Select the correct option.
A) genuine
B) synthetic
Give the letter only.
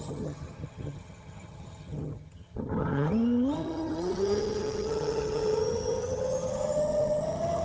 B